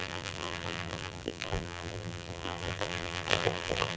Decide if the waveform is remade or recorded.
remade